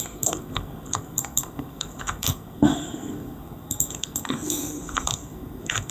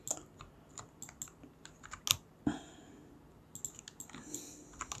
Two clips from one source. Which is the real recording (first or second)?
second